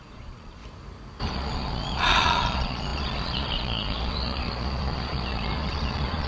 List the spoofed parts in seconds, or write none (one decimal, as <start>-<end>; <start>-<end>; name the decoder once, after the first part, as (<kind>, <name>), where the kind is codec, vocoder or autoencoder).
0.0-0.6 (vocoder, Vocos); 1.3-6.3